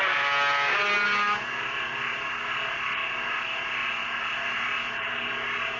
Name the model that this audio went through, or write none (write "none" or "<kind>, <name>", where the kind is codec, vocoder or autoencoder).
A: none